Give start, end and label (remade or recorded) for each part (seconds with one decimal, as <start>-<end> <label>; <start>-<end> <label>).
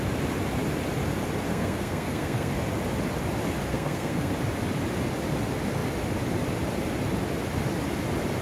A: 0.0-1.5 recorded; 1.5-2.5 remade; 2.5-3.7 recorded; 3.7-4.3 remade; 4.3-8.4 recorded